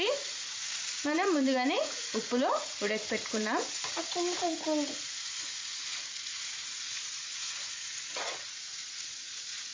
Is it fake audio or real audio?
fake